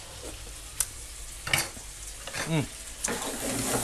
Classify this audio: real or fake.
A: real